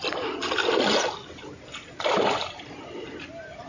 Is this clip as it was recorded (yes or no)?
yes